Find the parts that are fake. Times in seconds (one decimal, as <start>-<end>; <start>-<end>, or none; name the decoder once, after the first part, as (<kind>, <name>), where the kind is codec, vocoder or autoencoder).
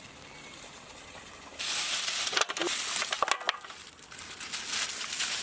none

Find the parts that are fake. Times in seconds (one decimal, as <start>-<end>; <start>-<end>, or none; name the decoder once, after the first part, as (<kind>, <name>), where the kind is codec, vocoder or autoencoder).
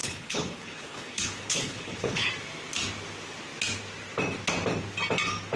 0.0-2.3 (codec, HILCodec)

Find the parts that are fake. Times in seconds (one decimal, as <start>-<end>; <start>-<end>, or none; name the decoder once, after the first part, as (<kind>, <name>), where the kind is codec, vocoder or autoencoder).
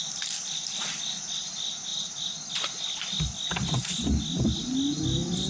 none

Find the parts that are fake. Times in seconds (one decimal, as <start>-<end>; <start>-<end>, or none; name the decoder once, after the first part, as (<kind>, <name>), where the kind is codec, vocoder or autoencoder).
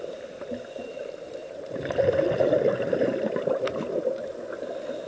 1.4-4.5 (vocoder, BigVGAN v2)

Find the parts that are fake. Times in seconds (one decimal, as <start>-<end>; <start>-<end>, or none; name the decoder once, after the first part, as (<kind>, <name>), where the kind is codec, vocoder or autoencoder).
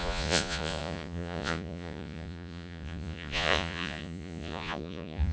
0.0-5.3 (vocoder, Vocos)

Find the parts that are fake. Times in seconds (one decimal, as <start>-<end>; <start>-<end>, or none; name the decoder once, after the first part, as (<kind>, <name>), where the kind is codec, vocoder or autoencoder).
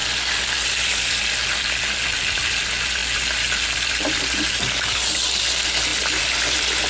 none